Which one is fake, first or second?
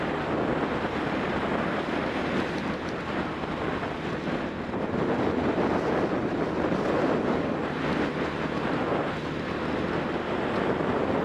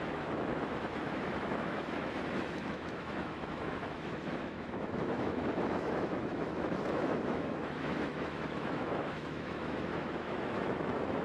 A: second